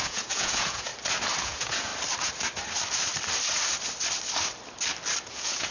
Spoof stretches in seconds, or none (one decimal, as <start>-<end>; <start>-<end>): 0.0-0.9; 1.4-1.9; 5.3-5.7